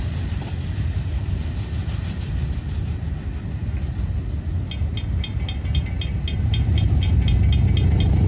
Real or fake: real